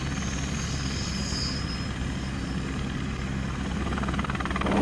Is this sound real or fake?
real